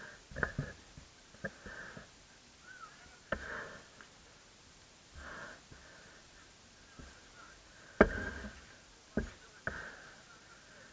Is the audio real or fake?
real